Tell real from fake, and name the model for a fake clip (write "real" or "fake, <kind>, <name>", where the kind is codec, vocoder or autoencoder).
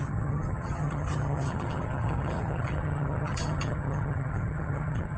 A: fake, vocoder, HiFi-GAN